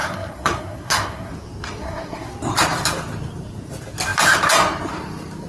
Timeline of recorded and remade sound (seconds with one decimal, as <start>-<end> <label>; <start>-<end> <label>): 0.0-1.3 remade; 1.3-1.8 recorded; 1.8-2.3 remade; 2.3-5.5 recorded